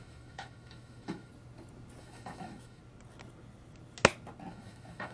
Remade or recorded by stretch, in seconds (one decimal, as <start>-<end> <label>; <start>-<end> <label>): 0.0-1.3 remade; 1.3-2.0 recorded; 2.0-2.8 remade; 2.8-4.5 recorded; 4.5-5.1 remade